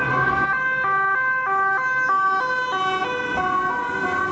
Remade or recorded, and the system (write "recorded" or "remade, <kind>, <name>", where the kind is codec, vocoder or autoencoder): recorded